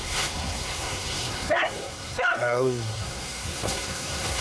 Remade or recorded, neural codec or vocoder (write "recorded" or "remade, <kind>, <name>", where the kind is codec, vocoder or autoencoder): remade, codec, SNAC